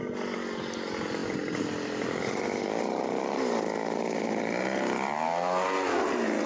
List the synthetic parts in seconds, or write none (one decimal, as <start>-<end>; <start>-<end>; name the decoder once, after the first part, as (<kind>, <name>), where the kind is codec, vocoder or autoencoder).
1.2-4.4 (vocoder, BigVGAN v2)